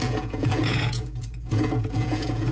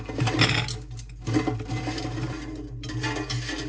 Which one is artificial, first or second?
first